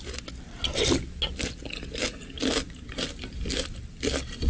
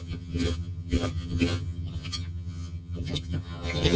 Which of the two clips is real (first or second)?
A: first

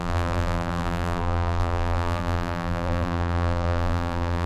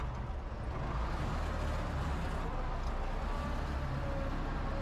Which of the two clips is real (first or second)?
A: second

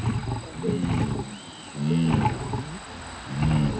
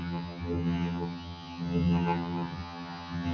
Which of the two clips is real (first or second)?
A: first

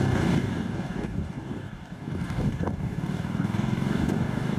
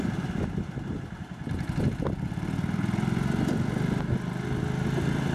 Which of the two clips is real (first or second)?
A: second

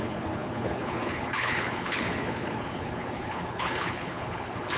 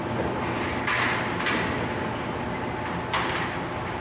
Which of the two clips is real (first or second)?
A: second